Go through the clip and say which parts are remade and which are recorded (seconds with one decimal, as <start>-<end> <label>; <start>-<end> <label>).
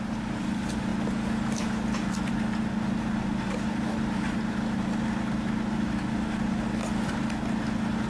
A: 0.0-8.1 recorded